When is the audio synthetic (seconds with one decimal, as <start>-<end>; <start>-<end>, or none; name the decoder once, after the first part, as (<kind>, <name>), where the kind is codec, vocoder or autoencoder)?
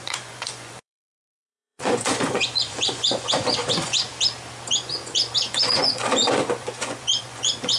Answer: 0.0-4.1 (vocoder, Vocos); 4.8-7.8